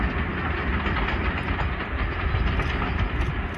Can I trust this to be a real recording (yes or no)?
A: yes